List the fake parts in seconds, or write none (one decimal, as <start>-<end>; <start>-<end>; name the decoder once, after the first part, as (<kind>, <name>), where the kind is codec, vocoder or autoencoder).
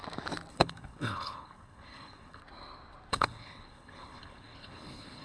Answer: 0.5-2.4 (codec, HILCodec); 3.1-5.2